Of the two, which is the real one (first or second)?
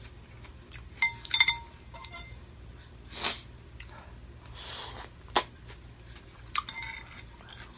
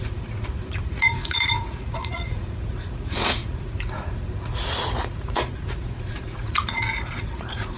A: first